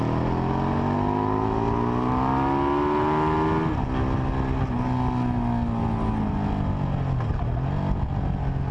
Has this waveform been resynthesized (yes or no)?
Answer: no